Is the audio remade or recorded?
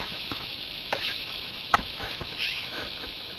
remade